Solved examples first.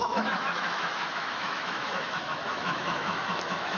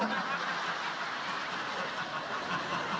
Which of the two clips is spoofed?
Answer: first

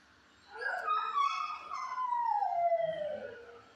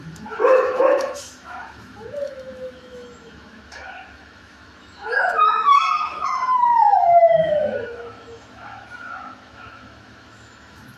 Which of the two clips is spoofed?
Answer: second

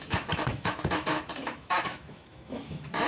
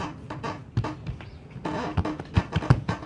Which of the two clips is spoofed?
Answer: first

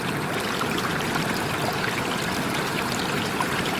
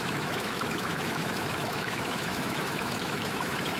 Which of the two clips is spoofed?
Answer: second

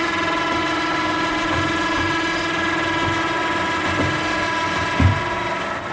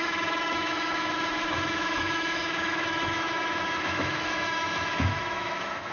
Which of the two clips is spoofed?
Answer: second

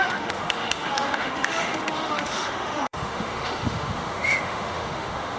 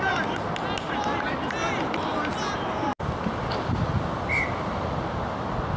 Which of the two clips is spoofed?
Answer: first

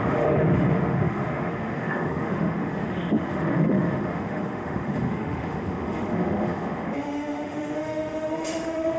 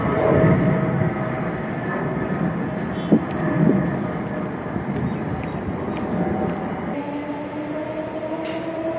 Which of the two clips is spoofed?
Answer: first